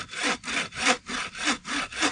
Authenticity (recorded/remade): recorded